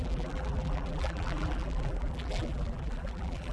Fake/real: fake